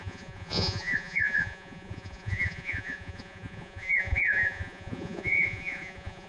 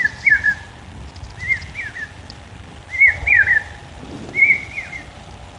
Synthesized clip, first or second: first